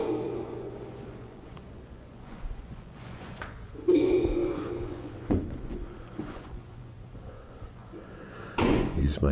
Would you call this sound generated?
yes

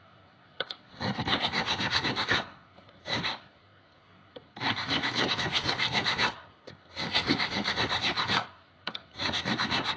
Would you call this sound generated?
yes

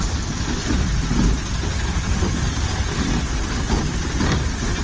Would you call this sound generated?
no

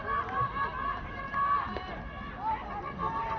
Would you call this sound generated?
no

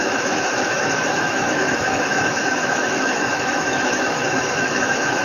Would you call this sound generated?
yes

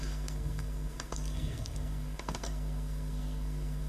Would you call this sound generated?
yes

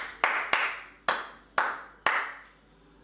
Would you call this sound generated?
no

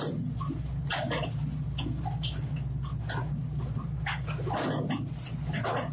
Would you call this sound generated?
no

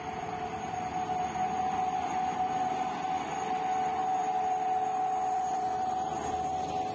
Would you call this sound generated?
no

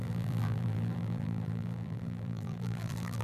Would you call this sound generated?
yes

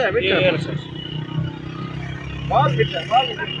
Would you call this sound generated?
no